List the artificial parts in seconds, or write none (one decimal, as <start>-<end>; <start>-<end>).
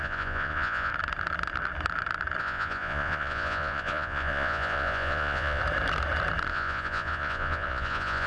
0.0-0.9; 2.4-5.6; 6.5-8.3